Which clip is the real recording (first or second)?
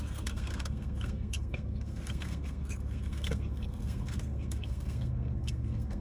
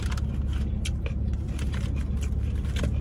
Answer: second